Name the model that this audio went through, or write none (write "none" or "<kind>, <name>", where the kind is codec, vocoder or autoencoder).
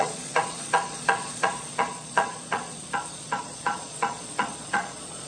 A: vocoder, Vocos